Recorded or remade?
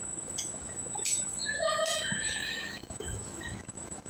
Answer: remade